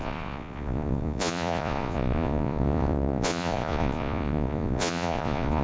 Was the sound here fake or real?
fake